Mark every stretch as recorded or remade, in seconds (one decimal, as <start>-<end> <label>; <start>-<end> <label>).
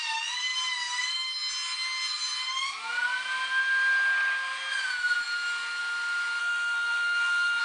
0.0-6.4 recorded; 6.4-7.6 remade